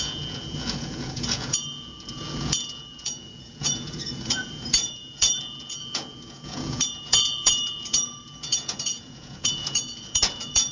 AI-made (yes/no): yes